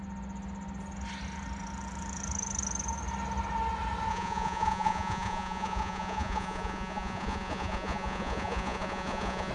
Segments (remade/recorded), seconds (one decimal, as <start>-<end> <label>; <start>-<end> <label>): 0.0-4.1 recorded; 4.1-9.5 remade